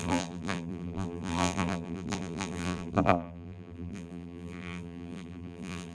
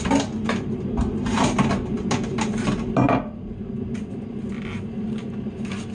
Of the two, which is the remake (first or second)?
first